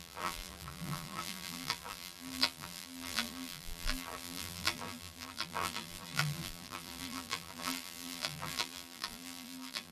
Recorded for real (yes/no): no